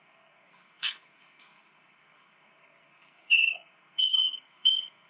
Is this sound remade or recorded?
remade